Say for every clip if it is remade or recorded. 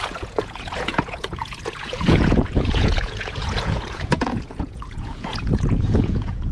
remade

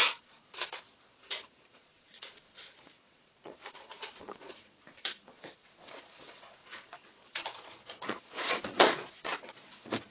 remade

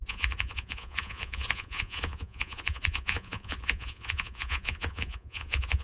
remade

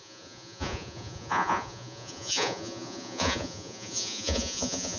remade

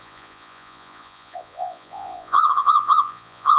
remade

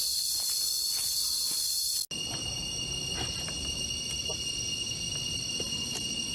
recorded